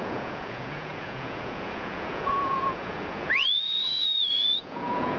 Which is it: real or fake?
fake